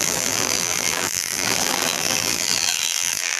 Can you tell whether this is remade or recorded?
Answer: remade